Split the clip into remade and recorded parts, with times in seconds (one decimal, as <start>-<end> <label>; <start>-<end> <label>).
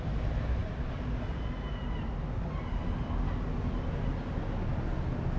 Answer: 0.0-5.4 recorded